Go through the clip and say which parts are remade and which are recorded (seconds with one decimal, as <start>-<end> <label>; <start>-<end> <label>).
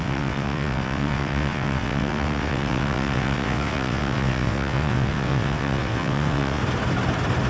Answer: 0.0-6.6 remade; 6.6-7.5 recorded